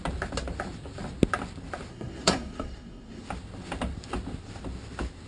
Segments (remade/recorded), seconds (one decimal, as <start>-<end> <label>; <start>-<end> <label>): 0.0-1.9 recorded; 1.9-3.2 remade; 3.2-5.3 recorded